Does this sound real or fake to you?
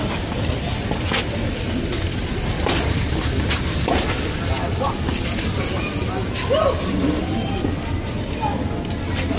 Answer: real